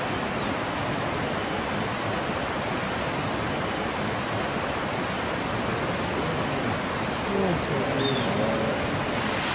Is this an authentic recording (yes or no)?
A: yes